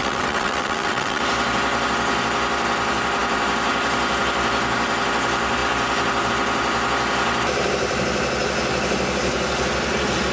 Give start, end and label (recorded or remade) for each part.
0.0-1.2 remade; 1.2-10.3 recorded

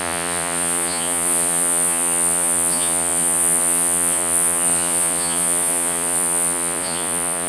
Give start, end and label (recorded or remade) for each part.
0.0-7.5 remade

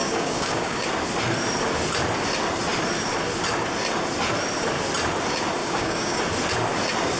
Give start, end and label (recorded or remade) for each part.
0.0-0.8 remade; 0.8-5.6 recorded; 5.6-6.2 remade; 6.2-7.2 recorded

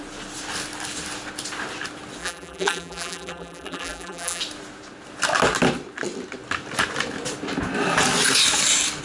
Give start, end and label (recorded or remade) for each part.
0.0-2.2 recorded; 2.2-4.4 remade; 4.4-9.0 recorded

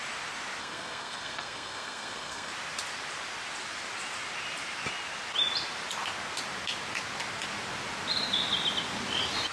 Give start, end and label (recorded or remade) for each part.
0.0-0.6 recorded; 0.6-2.5 remade; 2.5-9.5 recorded

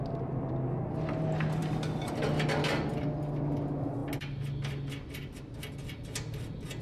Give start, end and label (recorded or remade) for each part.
0.0-6.8 recorded